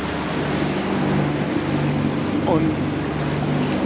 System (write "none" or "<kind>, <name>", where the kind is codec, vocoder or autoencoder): none